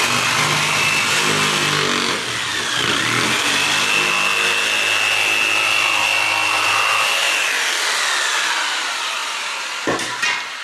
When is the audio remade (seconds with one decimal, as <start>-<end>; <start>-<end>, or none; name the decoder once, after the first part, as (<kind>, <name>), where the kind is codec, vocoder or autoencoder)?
none